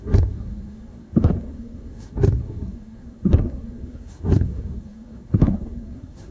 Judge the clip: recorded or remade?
remade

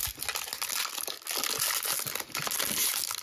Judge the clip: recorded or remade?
recorded